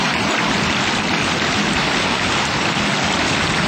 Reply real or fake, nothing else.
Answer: real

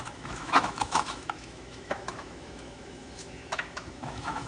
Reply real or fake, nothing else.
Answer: fake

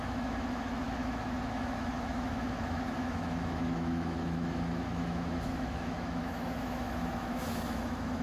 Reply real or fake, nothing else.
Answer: fake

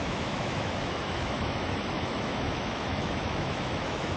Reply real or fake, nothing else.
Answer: fake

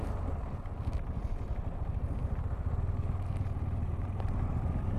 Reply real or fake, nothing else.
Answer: real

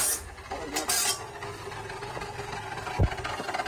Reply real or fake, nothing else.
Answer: real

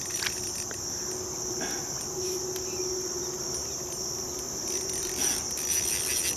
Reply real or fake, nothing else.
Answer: real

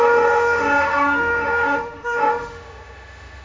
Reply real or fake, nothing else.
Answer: fake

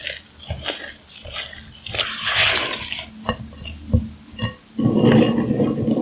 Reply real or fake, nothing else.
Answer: real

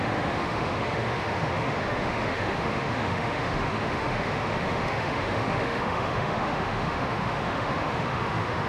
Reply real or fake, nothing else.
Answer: fake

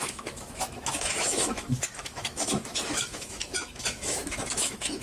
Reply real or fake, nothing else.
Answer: fake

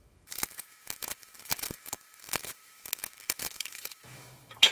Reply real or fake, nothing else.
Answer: fake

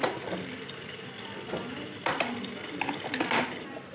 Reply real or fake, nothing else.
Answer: real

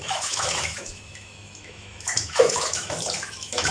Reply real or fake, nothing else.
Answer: fake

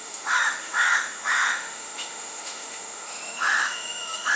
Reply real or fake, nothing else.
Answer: fake